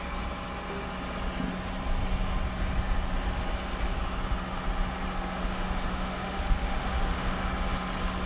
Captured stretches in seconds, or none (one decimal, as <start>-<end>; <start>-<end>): 0.0-5.4; 7.5-8.3